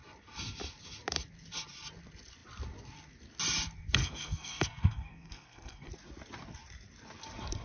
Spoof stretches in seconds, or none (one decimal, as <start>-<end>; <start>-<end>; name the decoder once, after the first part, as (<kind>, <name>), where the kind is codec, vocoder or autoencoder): 4.0-5.9 (codec, SNAC)